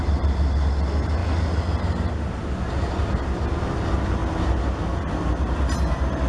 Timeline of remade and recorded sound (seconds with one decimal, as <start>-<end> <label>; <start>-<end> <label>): 0.0-6.3 recorded